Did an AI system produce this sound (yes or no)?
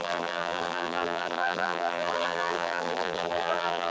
yes